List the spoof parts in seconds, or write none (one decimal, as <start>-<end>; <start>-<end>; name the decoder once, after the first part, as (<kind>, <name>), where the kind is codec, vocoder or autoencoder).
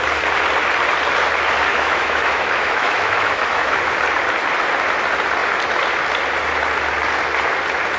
1.7-3.8 (autoencoder, DAC-VAE)